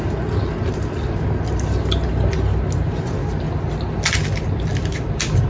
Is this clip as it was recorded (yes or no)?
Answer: yes